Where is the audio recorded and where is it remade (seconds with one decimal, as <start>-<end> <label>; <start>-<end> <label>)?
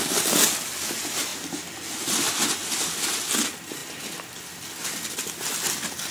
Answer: 0.0-6.1 recorded